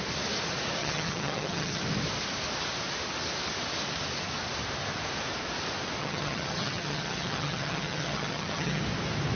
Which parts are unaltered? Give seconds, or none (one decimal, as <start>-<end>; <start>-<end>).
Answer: 0.0-0.8; 1.8-6.0; 8.8-9.4